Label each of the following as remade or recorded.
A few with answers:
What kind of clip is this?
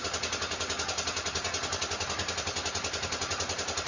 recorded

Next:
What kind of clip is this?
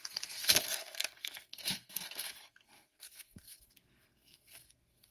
remade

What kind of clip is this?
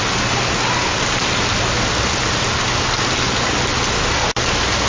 recorded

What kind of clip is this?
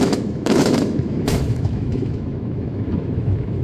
remade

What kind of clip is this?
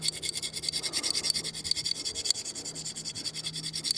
recorded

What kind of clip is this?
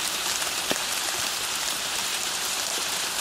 remade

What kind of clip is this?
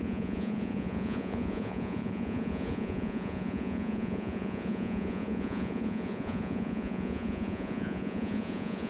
remade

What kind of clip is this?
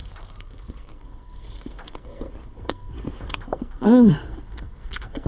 remade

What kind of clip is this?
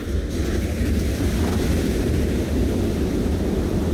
recorded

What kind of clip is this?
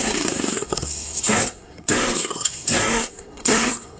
remade